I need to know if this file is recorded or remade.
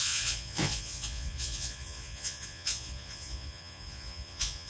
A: remade